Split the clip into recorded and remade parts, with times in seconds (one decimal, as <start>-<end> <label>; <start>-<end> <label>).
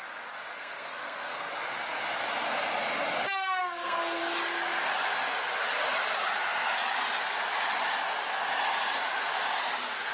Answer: 0.0-0.6 recorded; 0.6-1.5 remade; 1.5-3.6 recorded; 3.6-4.2 remade; 4.2-10.1 recorded